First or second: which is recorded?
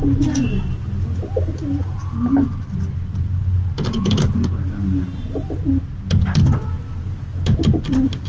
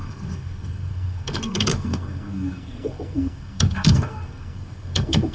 first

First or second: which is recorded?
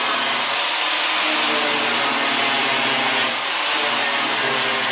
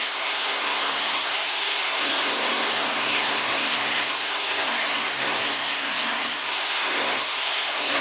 first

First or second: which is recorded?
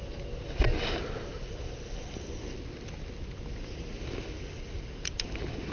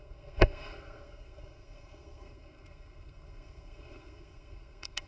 first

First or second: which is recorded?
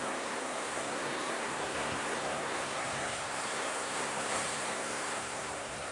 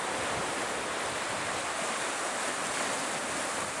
second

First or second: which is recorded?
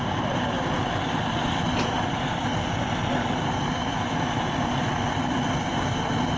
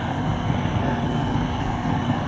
first